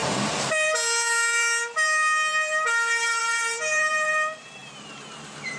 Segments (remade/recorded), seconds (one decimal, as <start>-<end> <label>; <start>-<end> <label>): 0.0-5.6 remade